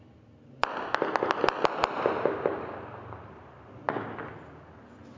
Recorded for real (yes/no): yes